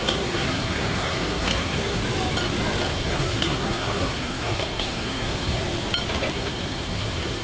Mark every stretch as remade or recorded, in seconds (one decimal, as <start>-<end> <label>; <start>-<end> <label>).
0.0-2.0 remade; 2.0-2.9 recorded; 2.9-5.6 remade; 5.6-6.3 recorded; 6.3-7.4 remade